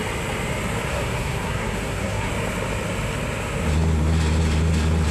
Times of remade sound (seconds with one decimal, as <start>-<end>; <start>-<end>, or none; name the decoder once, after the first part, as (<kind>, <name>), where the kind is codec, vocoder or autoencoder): 0.9-2.3 (codec, SNAC)

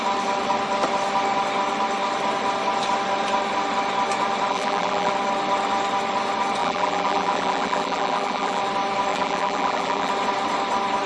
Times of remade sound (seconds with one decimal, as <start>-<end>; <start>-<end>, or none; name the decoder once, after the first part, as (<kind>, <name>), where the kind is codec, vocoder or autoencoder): 4.5-5.1 (vocoder, BigVGAN v2); 6.6-8.6; 9.1-10.1

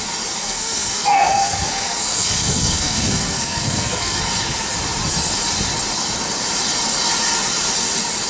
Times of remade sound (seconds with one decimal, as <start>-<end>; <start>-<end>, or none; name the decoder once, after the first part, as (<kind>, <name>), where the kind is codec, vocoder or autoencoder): 0.4-4.3 (codec, SNAC)

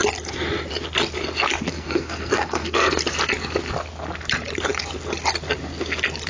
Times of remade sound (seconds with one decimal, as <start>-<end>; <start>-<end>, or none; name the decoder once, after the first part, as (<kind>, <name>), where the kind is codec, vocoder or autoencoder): 1.7-3.0 (codec, SNAC)